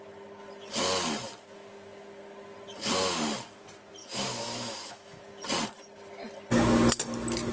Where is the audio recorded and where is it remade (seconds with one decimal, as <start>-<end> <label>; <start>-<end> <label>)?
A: 0.0-4.0 recorded; 4.0-5.2 remade; 5.2-7.5 recorded